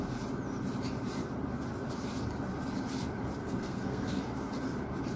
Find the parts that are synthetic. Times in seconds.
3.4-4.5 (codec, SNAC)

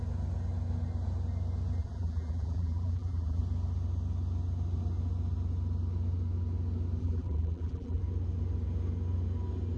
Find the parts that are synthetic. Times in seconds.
1.8-3.4 (vocoder, BigVGAN v2); 7.0-8.0